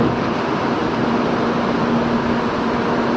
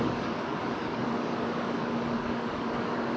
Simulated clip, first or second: second